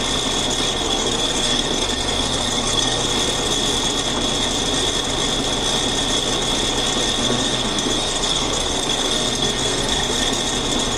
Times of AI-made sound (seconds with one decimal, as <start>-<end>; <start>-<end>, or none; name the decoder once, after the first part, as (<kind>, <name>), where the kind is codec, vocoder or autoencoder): 0.7-3.1 (codec, SNAC); 7.2-10.4